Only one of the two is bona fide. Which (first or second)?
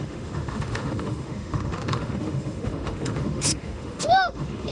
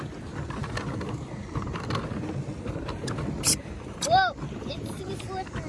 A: second